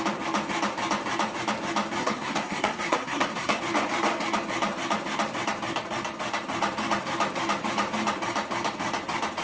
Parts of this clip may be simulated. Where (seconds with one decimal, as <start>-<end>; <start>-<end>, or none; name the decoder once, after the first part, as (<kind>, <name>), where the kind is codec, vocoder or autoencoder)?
2.0-3.6 (codec, SNAC)